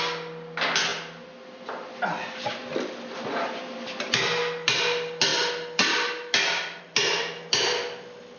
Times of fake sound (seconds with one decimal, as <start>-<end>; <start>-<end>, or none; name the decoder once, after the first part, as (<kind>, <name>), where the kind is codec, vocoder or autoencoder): none